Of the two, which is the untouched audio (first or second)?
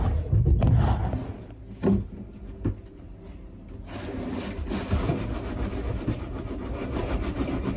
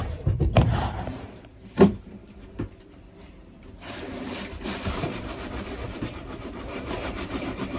first